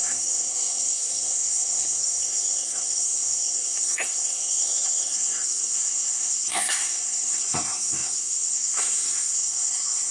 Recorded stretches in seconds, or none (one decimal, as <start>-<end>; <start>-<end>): none